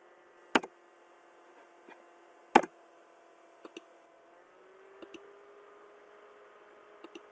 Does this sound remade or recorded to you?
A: recorded